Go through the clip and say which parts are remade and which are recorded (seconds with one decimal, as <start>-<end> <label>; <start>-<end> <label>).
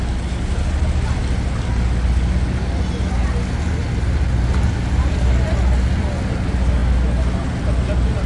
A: 0.0-8.3 recorded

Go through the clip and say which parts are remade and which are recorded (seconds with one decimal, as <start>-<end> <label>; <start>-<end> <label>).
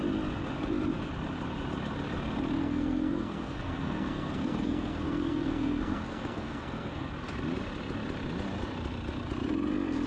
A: 0.0-2.6 recorded; 2.6-7.1 remade; 7.1-10.1 recorded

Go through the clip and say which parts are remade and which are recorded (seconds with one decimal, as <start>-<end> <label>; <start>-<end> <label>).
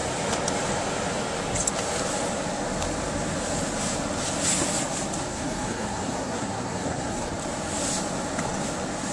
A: 0.0-5.3 recorded; 5.3-7.3 remade; 7.3-9.1 recorded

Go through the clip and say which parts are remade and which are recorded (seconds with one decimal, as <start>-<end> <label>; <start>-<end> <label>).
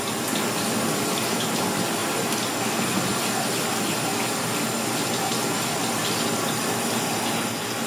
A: 0.0-7.9 recorded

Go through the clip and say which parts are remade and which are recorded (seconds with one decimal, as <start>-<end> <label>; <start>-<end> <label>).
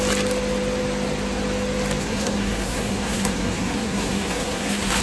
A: 0.0-2.0 recorded; 2.0-5.0 remade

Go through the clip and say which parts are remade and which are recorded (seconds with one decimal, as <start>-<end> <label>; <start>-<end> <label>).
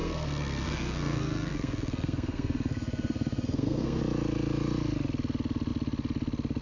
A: 0.0-4.0 remade; 4.0-6.6 recorded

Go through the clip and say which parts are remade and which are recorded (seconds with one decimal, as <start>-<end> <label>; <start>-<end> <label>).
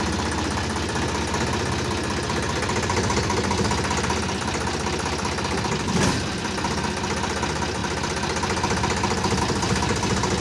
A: 0.0-10.4 recorded